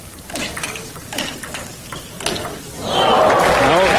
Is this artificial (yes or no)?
no